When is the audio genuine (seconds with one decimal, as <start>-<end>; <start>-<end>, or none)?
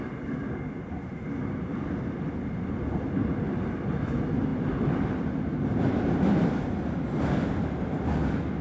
0.0-8.6